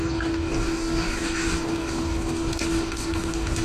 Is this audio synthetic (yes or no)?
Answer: yes